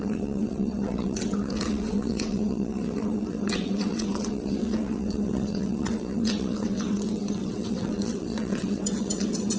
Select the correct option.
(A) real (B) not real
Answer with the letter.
B